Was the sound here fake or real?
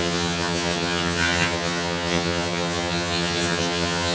fake